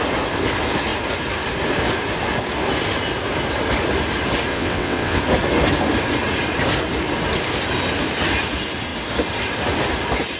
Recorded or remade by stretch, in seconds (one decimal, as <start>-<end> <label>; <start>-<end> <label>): 0.0-4.5 recorded; 4.5-5.2 remade; 5.2-10.4 recorded

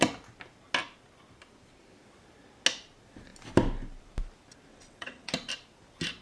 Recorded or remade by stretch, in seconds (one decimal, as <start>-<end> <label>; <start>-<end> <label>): 0.0-4.7 recorded; 4.7-5.3 remade; 5.3-6.2 recorded

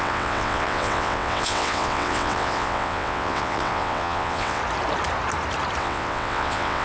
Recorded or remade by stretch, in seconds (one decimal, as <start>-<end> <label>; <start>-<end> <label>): 0.0-4.6 remade; 4.6-5.8 recorded; 5.8-6.8 remade

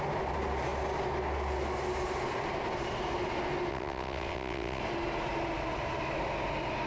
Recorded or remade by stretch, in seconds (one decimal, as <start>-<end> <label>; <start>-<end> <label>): 0.0-3.7 recorded; 3.7-4.8 remade; 4.8-6.9 recorded

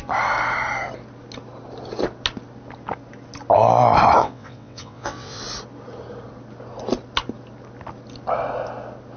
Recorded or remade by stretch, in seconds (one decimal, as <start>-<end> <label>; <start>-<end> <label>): 0.0-4.2 recorded; 4.2-5.4 remade; 5.4-9.2 recorded

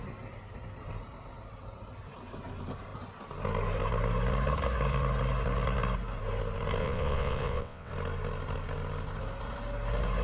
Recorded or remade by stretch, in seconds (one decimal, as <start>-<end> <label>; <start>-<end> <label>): 0.0-6.8 recorded; 6.8-7.9 remade; 7.9-10.2 recorded

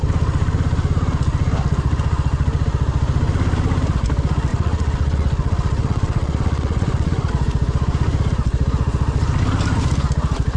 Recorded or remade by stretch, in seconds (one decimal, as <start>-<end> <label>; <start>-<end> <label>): 0.0-4.5 recorded; 4.5-7.3 remade; 7.3-10.6 recorded